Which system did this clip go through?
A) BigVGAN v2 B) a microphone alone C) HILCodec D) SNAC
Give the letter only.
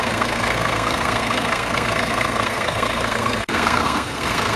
D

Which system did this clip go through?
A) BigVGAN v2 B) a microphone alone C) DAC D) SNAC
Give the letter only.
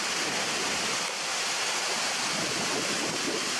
B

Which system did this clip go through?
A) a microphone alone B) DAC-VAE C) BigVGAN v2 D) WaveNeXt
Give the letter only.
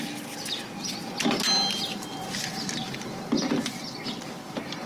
A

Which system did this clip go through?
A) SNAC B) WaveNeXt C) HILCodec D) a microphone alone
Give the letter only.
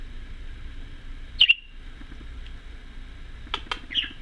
D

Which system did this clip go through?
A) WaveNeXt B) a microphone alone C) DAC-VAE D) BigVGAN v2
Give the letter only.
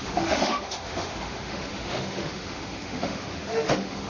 C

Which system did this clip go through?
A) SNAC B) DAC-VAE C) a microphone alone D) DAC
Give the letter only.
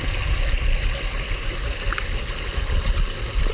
C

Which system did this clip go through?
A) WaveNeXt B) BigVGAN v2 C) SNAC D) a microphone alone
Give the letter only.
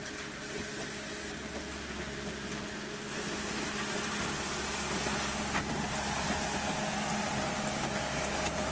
D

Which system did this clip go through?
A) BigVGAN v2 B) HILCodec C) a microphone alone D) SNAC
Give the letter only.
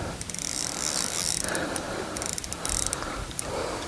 C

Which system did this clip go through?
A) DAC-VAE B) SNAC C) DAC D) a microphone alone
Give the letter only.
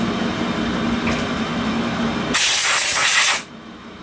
D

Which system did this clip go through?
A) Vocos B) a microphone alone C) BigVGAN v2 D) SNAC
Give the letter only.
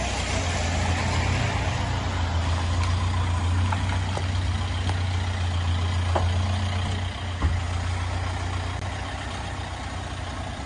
B